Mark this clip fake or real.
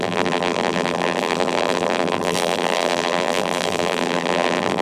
fake